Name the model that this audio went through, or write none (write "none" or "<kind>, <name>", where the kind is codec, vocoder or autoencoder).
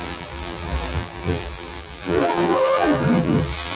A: vocoder, BigVGAN v2